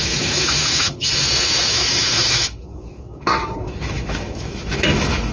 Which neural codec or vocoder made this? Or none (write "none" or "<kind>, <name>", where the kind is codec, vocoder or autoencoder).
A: autoencoder, DAC-VAE